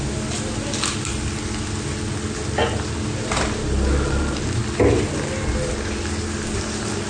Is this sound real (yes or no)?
yes